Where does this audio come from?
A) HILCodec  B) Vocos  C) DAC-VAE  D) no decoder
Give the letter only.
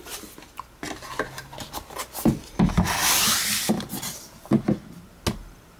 D